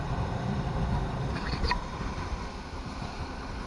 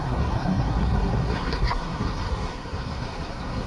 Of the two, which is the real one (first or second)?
first